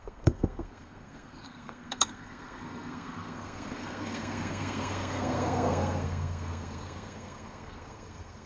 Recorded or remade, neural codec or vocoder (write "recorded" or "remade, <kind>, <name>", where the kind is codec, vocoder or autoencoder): remade, codec, SNAC